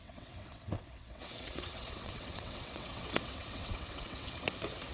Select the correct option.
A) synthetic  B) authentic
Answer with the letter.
A